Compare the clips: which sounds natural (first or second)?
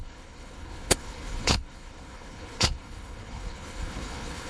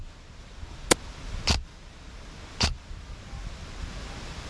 second